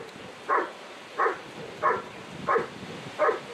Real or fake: fake